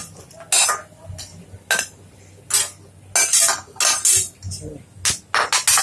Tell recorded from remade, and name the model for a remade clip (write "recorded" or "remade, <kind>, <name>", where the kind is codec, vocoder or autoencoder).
recorded